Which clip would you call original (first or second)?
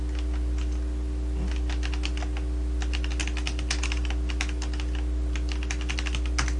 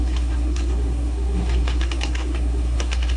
first